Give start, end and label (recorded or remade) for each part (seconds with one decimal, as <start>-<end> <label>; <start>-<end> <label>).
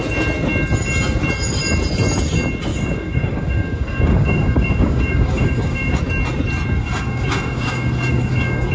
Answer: 0.0-2.7 recorded; 2.7-6.0 remade; 6.0-6.8 recorded; 6.8-8.7 remade